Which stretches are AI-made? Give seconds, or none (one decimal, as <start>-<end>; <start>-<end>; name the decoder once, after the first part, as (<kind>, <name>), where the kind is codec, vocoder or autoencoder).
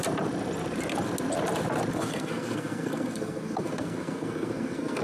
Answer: 1.9-5.0 (codec, SNAC)